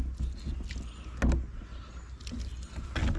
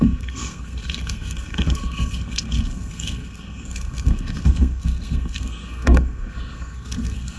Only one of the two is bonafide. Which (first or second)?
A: first